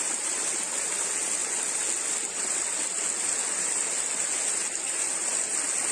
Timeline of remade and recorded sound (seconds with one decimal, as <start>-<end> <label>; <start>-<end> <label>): 0.0-5.9 recorded